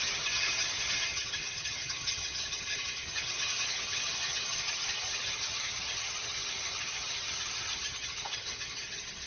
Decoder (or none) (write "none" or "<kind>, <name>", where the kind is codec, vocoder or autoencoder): vocoder, HiFi-GAN